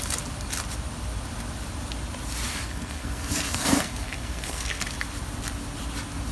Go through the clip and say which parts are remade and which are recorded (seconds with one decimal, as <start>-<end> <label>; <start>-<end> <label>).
0.0-2.5 recorded; 2.5-4.8 remade; 4.8-6.3 recorded